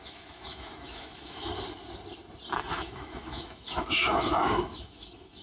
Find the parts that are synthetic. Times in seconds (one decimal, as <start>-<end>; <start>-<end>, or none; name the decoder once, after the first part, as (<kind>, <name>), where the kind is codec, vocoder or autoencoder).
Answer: 0.0-1.5 (autoencoder, DAC-VAE); 2.7-5.4